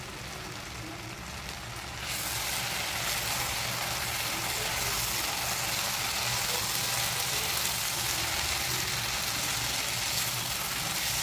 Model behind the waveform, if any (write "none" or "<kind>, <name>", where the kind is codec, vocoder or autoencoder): none